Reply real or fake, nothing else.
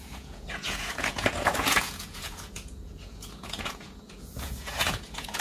fake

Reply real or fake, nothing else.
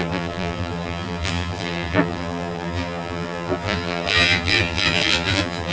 fake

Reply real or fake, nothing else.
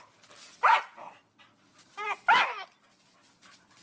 real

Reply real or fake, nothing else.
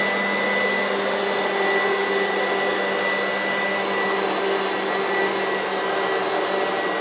real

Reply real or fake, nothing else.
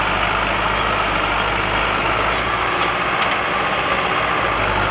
real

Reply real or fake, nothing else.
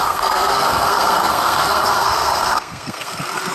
fake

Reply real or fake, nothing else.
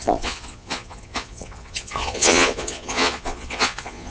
fake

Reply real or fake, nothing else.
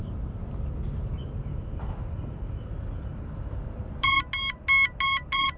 real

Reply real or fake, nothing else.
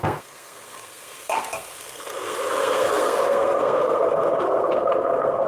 fake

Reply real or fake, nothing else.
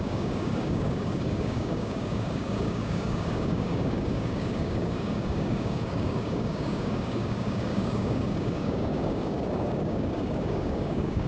fake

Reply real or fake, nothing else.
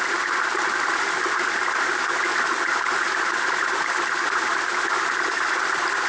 real